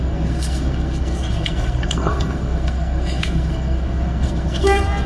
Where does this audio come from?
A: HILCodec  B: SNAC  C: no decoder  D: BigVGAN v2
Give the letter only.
B